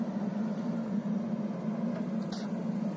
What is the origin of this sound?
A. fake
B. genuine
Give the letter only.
B